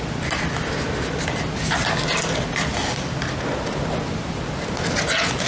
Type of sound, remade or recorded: recorded